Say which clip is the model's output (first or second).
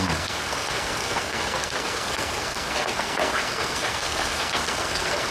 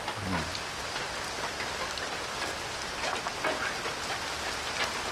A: first